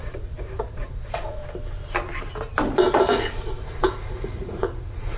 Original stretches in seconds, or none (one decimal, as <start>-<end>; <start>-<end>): 1.4-2.9